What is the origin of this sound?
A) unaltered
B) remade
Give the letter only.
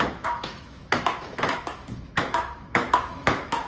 B